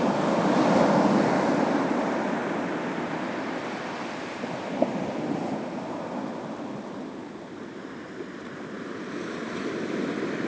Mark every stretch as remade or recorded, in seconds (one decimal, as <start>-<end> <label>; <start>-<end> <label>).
0.0-10.5 recorded